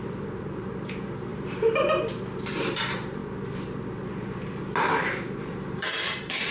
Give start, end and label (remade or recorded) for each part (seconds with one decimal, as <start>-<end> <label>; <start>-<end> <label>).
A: 0.0-3.2 remade; 3.2-5.0 recorded; 5.0-6.5 remade